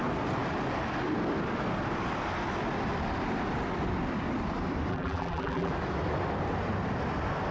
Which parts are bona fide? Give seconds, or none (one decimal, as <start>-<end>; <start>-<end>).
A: 0.0-4.9; 5.7-7.5